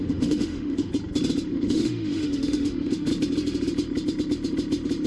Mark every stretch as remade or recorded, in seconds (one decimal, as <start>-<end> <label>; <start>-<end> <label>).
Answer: 0.0-0.9 remade; 0.9-1.5 recorded; 1.5-3.1 remade; 3.1-5.1 recorded